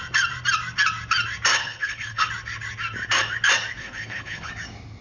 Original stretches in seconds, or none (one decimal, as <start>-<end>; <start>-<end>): 0.0-1.6; 2.3-3.8; 4.5-5.0